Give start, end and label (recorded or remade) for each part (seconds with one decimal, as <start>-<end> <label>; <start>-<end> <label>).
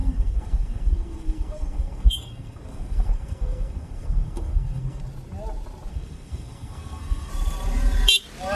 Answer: 0.0-5.0 remade; 5.0-5.9 recorded; 5.9-7.3 remade; 7.3-8.6 recorded